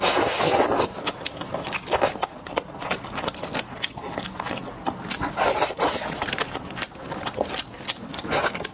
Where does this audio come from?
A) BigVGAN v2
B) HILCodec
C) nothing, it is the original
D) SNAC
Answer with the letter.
C